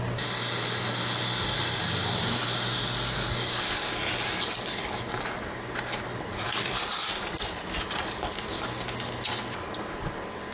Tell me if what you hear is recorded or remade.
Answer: recorded